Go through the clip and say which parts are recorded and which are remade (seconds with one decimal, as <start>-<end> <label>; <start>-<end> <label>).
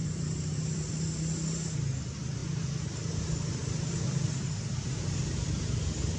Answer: 0.0-1.0 remade; 1.0-3.6 recorded; 3.6-5.2 remade; 5.2-6.2 recorded